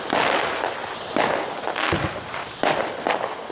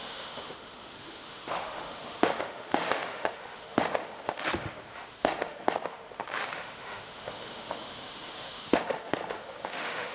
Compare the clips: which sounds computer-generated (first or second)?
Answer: second